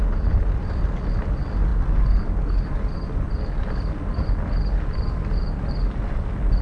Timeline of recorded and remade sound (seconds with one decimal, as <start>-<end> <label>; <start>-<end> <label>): 0.0-6.6 recorded